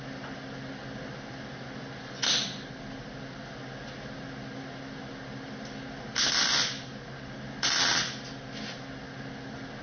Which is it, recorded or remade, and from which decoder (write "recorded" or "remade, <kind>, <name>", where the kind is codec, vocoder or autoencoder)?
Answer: recorded